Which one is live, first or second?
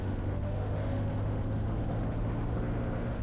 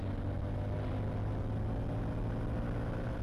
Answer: second